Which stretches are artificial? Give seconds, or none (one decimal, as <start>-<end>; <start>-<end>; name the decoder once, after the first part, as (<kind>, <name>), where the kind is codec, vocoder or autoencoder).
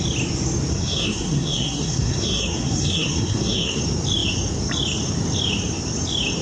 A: 0.7-3.8 (codec, SNAC)